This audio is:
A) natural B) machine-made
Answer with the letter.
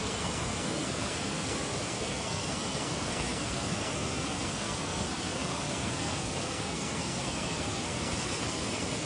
B